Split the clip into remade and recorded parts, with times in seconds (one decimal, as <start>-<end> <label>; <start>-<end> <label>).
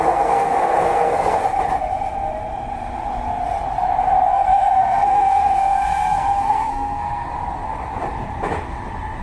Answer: 0.0-1.4 remade; 1.4-4.3 recorded; 4.3-7.3 remade; 7.3-9.2 recorded